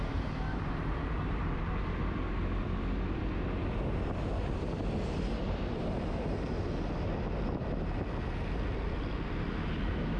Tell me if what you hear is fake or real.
real